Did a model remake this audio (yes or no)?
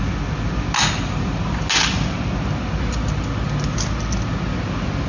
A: no